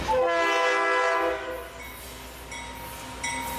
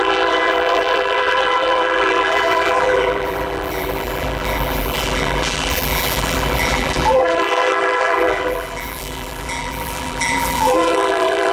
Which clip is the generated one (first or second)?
second